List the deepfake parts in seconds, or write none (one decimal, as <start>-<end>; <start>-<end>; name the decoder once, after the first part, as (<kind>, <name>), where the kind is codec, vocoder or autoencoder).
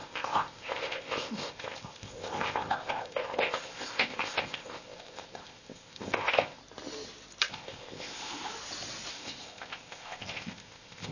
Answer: 0.0-6.6 (codec, ZipCodec); 7.5-8.5; 9.1-11.1